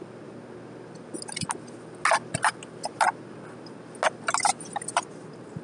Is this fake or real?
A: real